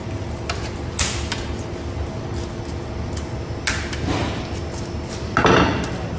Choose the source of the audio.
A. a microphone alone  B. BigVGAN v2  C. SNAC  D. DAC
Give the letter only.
A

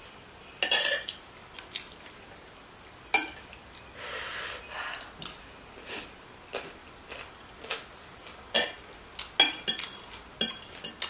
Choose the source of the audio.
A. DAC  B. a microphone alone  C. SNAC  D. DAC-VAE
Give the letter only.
B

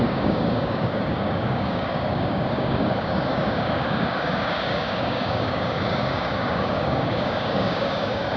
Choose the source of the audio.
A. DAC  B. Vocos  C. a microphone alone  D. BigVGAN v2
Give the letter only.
A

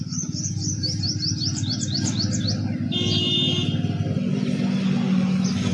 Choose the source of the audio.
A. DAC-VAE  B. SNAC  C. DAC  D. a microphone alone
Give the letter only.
D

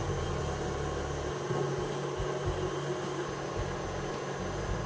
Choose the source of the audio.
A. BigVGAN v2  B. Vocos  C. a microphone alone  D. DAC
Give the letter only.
C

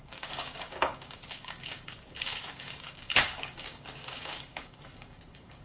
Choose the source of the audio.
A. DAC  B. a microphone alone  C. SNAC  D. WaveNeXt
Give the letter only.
A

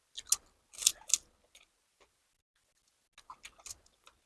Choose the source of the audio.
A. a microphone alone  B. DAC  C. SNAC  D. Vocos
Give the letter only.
A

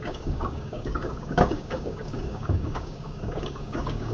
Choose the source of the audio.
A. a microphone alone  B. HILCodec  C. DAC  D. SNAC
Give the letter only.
C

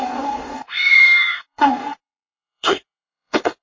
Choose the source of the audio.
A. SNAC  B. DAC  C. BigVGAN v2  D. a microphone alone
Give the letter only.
B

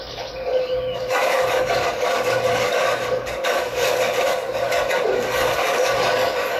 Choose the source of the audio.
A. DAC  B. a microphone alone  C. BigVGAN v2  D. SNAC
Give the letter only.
A